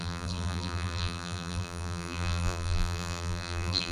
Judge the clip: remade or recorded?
remade